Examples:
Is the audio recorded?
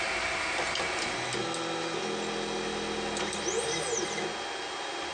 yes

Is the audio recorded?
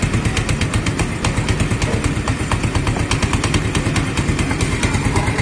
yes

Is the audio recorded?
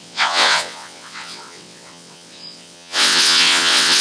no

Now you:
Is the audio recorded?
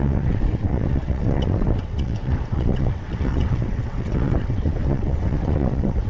no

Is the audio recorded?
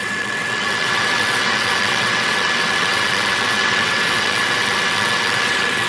no